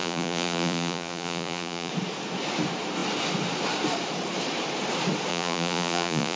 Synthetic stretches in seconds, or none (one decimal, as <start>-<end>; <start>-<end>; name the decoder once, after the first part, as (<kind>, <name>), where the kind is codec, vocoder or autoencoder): 0.0-1.9 (vocoder, Vocos); 5.3-6.4